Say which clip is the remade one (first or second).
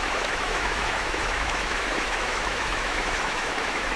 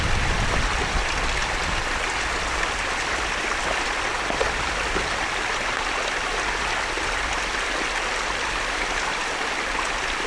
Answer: first